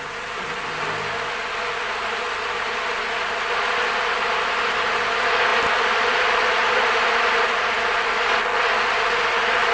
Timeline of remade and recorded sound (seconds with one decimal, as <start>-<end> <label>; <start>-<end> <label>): 0.0-9.7 recorded